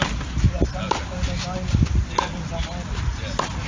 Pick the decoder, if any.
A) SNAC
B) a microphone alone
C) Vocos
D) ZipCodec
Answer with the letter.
B